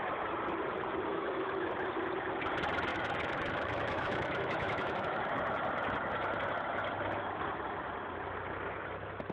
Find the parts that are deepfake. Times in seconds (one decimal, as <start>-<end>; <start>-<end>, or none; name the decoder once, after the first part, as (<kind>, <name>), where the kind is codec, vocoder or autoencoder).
1.1-1.7 (autoencoder, DAC-VAE); 2.9-5.3